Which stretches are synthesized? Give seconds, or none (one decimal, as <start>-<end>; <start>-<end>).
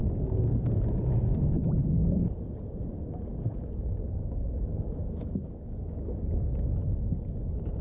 0.0-0.8; 1.3-2.2; 3.3-6.5